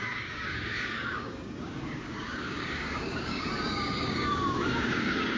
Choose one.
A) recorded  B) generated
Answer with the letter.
B